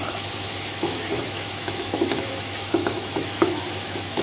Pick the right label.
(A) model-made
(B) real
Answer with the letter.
A